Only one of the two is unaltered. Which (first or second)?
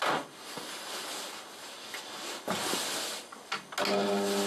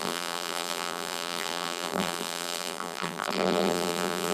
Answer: first